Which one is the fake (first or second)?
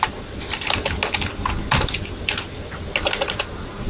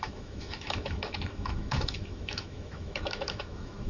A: second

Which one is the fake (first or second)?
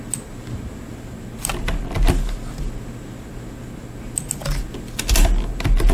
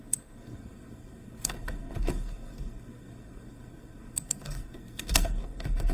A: second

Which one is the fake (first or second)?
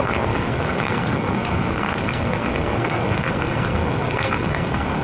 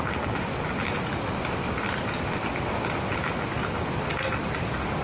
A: first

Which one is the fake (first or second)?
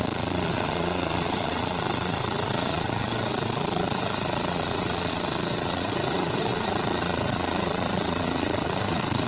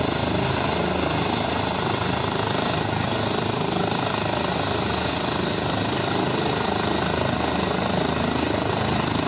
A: first